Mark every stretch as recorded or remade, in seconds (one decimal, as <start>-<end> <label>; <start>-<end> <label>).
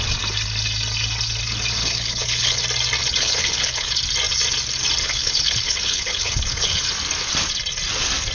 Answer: 0.0-1.8 recorded; 1.8-2.6 remade; 2.6-3.0 recorded; 3.0-4.0 remade; 4.0-5.0 recorded; 5.0-6.9 remade; 6.9-8.3 recorded